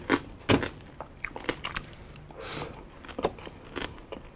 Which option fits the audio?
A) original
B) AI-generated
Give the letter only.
A